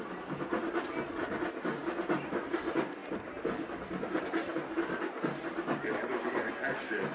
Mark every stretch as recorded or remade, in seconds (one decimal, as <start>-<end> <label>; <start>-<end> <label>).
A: 0.0-7.1 recorded